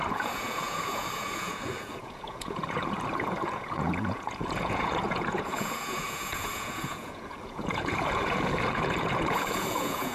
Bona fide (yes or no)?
no